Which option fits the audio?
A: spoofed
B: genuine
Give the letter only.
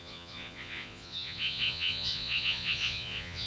A